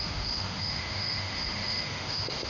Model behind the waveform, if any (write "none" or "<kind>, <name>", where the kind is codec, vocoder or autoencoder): autoencoder, DAC-VAE